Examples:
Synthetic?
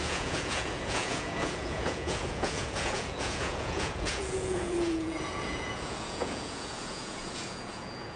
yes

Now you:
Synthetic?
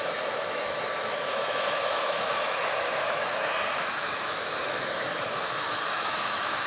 yes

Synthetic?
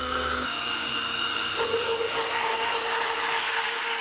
yes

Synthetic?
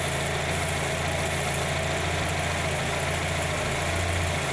no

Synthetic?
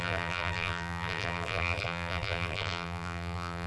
yes